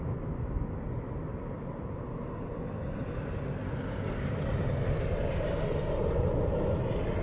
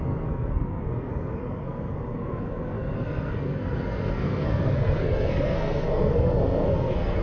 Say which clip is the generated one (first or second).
second